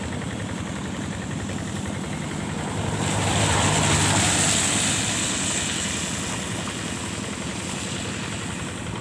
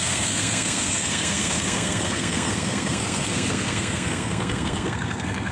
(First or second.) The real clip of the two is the first